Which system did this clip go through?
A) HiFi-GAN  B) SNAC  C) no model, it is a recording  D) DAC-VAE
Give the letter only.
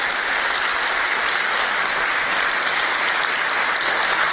C